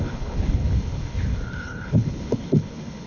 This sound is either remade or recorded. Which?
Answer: remade